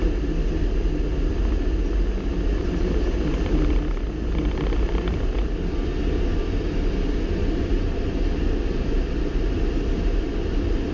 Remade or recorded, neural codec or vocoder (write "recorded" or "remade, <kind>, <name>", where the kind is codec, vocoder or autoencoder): recorded